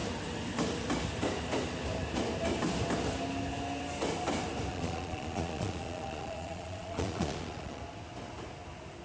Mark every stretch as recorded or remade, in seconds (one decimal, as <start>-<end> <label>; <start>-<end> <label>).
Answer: 0.0-4.7 recorded; 4.7-7.8 remade; 7.8-9.0 recorded